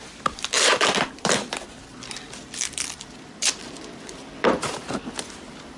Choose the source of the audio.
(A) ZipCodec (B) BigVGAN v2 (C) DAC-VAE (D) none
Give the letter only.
B